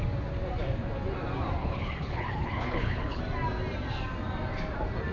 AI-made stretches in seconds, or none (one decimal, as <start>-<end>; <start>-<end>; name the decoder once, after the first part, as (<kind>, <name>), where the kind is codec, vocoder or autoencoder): 1.6-3.2 (codec, HILCodec)